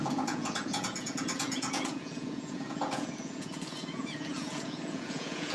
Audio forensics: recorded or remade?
remade